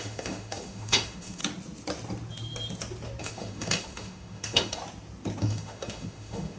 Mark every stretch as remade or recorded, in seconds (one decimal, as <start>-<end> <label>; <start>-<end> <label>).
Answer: 0.0-1.4 remade; 1.4-3.2 recorded; 3.2-4.8 remade; 4.8-5.4 recorded; 5.4-6.6 remade